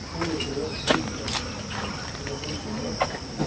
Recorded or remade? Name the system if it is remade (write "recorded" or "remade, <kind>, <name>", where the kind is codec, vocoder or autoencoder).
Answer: recorded